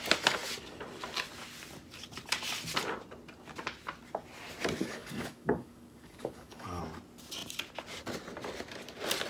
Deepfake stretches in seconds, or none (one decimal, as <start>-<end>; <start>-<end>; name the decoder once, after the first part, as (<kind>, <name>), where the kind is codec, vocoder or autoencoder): 4.8-6.8 (codec, DAC)